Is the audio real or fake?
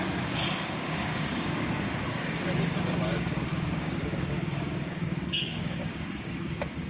fake